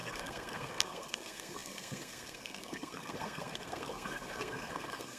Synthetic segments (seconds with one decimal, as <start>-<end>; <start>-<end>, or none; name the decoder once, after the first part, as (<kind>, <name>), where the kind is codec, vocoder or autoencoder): 0.0-5.2 (codec, SNAC)